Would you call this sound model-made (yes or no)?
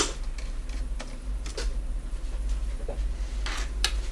no